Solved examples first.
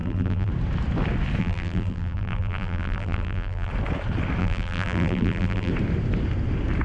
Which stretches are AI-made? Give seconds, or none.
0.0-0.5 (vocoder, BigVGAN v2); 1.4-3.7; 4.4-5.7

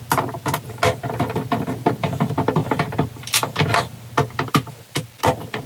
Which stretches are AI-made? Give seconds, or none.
none

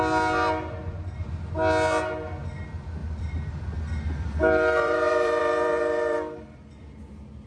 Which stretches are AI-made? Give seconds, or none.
3.0-6.8 (vocoder, BigVGAN v2)

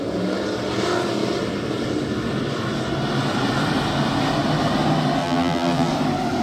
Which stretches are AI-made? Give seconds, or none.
5.2-5.9 (vocoder, BigVGAN v2)

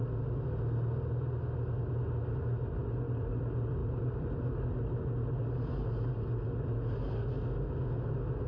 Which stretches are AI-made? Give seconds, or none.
3.8-4.3 (vocoder, BigVGAN v2)